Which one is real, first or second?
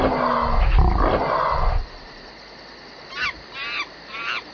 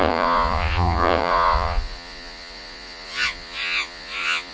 first